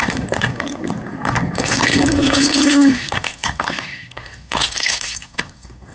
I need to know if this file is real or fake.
fake